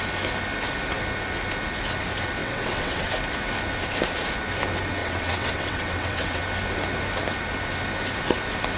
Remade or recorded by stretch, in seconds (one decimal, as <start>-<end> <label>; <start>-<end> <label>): 0.0-2.4 recorded; 2.4-3.1 remade; 3.1-5.0 recorded; 5.0-6.4 remade; 6.4-8.8 recorded